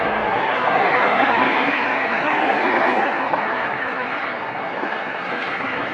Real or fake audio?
fake